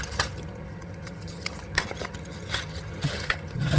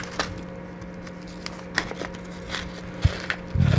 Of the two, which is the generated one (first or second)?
first